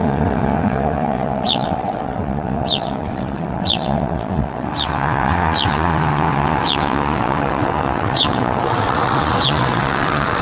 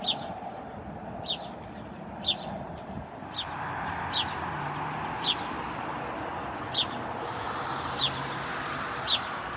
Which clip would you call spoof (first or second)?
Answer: first